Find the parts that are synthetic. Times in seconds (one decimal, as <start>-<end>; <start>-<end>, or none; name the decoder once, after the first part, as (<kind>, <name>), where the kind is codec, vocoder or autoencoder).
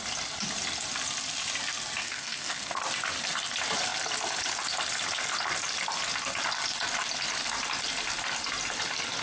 2.0-2.8 (codec, SNAC)